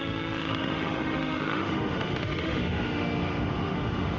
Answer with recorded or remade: remade